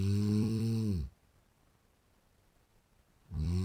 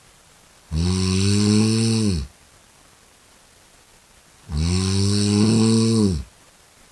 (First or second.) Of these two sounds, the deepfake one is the first